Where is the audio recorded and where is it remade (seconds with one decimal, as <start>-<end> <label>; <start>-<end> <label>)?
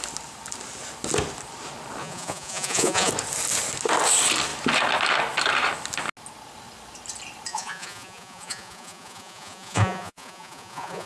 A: 0.0-2.0 recorded; 2.0-3.1 remade; 3.1-7.5 recorded; 7.5-11.1 remade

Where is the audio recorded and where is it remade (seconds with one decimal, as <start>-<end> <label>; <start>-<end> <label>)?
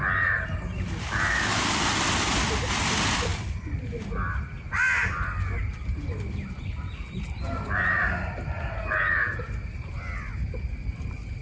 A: 0.0-11.4 recorded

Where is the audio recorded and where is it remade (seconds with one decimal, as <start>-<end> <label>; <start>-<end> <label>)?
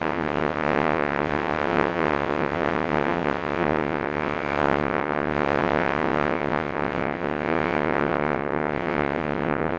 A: 0.0-9.8 remade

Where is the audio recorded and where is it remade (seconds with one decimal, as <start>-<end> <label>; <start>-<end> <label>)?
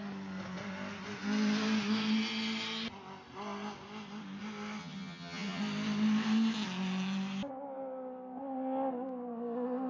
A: 0.0-4.8 recorded; 4.8-5.6 remade; 5.6-9.9 recorded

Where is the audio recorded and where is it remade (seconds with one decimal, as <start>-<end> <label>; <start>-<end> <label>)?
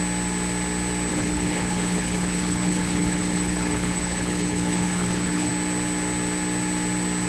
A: 0.0-1.1 recorded; 1.1-5.5 remade; 5.5-7.3 recorded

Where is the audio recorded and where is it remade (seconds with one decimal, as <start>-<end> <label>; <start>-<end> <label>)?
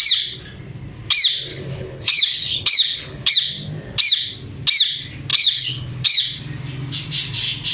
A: 0.0-1.5 recorded; 1.5-3.3 remade; 3.3-5.3 recorded; 5.3-6.2 remade; 6.2-7.7 recorded